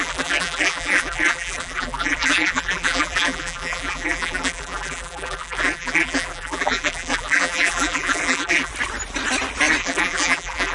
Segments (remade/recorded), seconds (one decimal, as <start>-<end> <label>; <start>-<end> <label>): 0.0-8.7 remade; 8.7-9.8 recorded; 9.8-10.7 remade